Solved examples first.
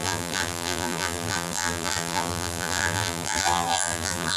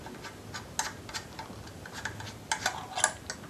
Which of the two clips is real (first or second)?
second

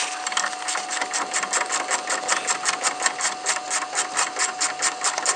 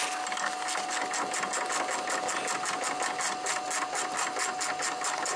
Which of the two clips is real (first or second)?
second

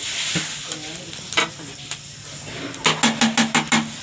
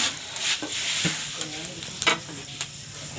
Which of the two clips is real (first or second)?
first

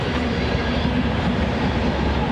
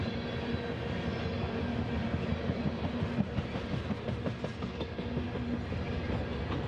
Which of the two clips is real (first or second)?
second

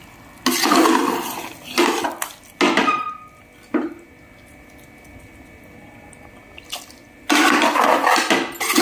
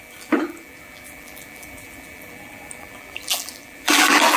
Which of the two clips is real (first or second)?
first